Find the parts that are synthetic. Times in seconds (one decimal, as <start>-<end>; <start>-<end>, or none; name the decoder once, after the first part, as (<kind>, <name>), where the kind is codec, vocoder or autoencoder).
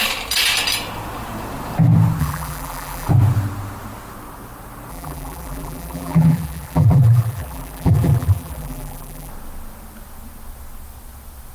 2.2-3.1 (vocoder, BigVGAN v2); 4.9-9.3